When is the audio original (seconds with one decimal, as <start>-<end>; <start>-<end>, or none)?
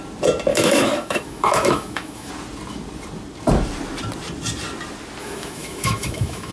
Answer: 0.0-0.5; 2.3-5.2